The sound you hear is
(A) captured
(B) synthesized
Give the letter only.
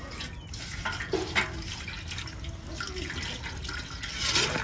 A